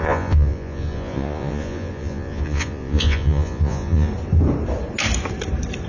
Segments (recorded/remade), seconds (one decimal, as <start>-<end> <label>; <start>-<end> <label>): 0.0-4.1 remade; 4.1-5.9 recorded